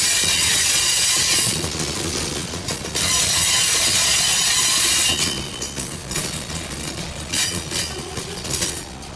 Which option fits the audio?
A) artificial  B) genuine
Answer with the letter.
A